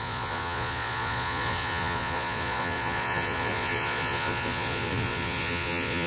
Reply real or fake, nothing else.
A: fake